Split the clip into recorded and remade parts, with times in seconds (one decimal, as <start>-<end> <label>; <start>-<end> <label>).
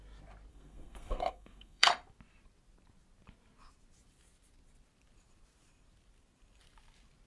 0.0-0.5 recorded; 0.5-1.9 remade; 1.9-7.3 recorded